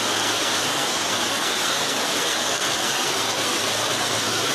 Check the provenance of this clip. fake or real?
fake